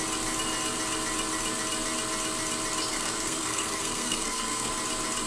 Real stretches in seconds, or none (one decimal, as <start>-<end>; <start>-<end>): 0.0-2.9; 4.7-5.3